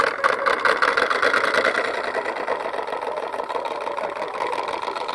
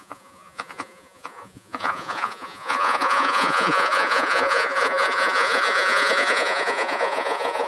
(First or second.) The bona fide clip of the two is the first